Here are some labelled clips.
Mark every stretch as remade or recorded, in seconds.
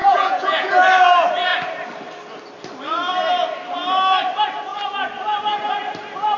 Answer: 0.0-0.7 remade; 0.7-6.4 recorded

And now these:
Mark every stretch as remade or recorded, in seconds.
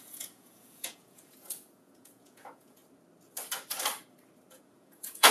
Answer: 0.0-2.8 remade; 2.8-4.5 recorded; 4.5-5.3 remade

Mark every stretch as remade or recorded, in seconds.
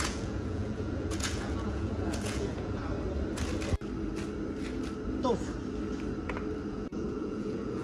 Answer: 0.0-2.8 remade; 2.8-6.7 recorded; 6.7-7.8 remade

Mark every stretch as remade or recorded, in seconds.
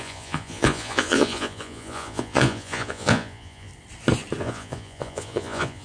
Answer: 0.0-3.7 remade; 3.7-4.4 recorded; 4.4-5.8 remade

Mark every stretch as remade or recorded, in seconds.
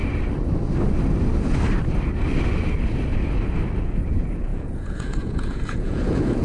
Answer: 0.0-3.8 recorded; 3.8-6.4 remade